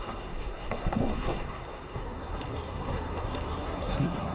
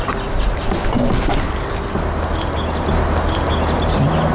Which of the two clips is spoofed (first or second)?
first